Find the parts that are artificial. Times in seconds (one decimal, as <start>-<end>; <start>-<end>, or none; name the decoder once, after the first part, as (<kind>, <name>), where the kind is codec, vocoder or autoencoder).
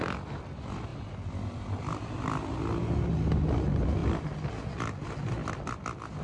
0.9-2.6 (vocoder, BigVGAN v2); 5.4-6.2